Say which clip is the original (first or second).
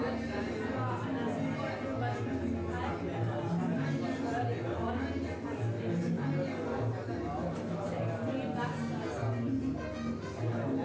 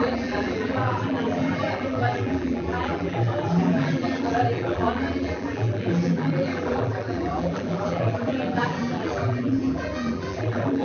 first